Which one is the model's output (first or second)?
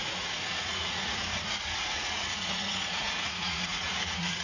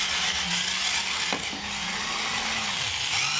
first